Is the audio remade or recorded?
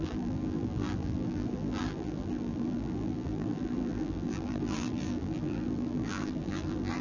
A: remade